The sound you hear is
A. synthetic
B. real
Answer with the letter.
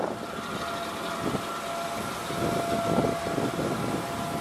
B